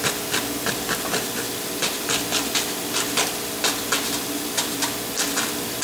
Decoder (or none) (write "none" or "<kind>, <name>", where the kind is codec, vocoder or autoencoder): none